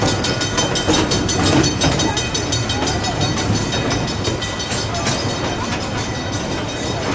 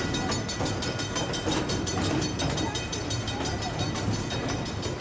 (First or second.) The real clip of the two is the first